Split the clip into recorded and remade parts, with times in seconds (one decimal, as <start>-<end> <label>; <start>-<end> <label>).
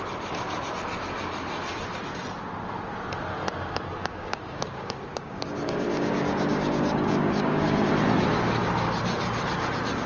0.0-4.0 recorded; 4.0-7.9 remade; 7.9-10.1 recorded